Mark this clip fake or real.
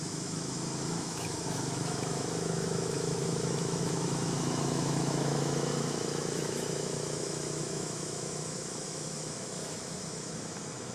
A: fake